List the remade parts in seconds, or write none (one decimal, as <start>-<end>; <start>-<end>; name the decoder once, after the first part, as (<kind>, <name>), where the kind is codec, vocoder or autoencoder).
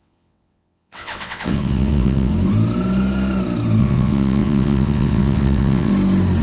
0.0-2.3 (vocoder, WaveNeXt); 3.8-5.9